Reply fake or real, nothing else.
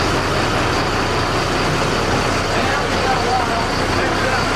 real